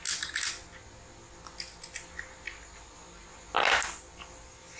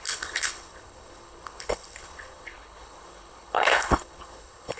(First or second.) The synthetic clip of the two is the second